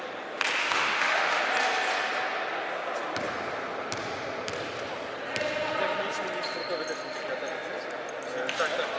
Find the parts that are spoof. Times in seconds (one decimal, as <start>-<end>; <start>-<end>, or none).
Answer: 0.6-1.4